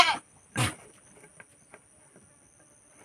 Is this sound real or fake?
real